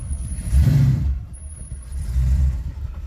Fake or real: fake